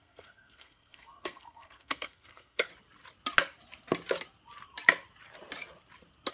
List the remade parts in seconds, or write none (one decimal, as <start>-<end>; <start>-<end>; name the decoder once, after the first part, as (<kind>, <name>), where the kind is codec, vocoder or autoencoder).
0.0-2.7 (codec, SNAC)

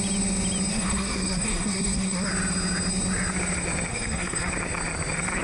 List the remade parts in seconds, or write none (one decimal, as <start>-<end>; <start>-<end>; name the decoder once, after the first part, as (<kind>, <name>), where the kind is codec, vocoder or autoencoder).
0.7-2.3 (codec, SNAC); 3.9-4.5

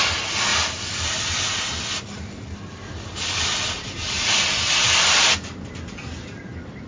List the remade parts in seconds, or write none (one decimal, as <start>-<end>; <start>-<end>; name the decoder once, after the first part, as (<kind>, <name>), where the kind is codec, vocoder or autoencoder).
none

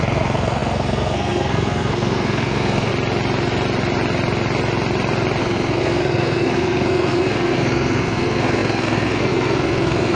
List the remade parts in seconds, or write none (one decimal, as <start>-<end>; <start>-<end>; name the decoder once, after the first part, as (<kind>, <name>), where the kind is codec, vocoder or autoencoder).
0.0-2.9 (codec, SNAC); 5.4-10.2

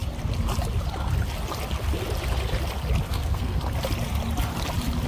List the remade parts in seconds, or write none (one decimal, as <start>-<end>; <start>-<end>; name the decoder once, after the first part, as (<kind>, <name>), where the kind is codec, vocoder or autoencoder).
3.1-3.6 (codec, SNAC)

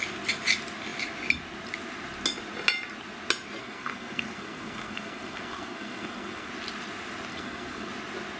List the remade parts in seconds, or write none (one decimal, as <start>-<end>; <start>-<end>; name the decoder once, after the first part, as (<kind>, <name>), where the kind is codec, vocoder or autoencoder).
3.6-6.5 (codec, SNAC); 7.3-7.9

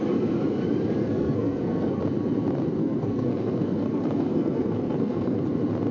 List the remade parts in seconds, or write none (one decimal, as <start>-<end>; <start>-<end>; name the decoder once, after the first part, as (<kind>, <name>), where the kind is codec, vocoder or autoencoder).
1.0-2.0 (codec, SNAC); 2.8-5.4